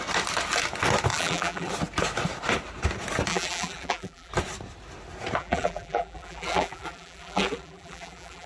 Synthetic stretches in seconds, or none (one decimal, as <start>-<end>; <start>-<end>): 1.1-1.7; 3.3-4.3; 5.4-8.5